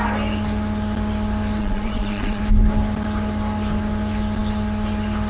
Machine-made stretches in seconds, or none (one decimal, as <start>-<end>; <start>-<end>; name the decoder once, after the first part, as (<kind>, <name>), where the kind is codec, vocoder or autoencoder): 1.6-2.4 (vocoder, Vocos)